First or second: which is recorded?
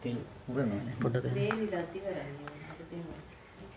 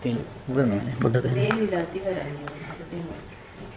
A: first